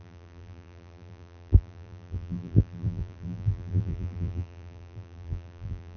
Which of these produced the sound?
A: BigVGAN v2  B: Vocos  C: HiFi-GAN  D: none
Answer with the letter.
A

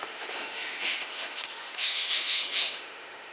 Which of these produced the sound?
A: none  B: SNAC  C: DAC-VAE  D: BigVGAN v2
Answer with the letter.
C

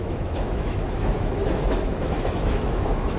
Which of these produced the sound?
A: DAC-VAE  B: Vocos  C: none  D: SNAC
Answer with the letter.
A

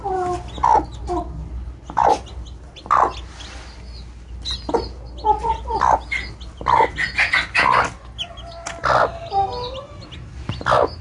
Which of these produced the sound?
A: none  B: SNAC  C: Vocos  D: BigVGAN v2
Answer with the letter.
A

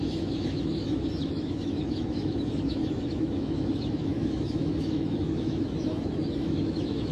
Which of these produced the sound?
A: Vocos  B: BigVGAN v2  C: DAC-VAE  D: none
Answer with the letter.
C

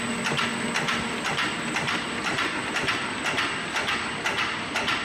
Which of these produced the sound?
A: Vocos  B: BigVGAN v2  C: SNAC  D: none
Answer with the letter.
D